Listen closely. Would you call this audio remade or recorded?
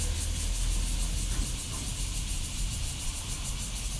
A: recorded